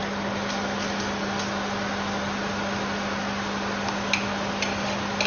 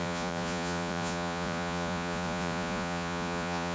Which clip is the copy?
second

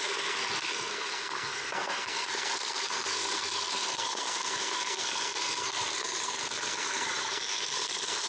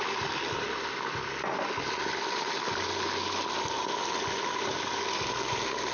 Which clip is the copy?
first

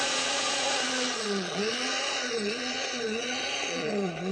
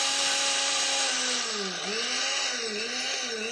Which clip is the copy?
first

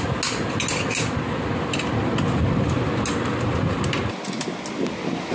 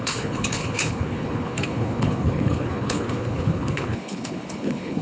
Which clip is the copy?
second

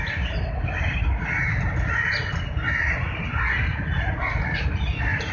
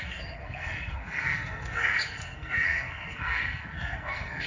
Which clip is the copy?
second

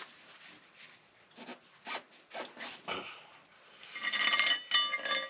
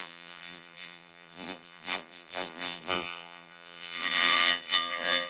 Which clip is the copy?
second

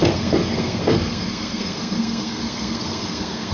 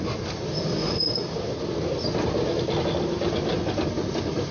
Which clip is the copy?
first